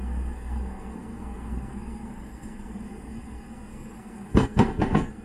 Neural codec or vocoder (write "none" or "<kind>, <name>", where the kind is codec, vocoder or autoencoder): codec, SNAC